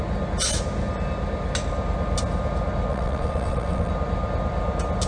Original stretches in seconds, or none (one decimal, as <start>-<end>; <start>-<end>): 0.0-2.9; 3.9-5.1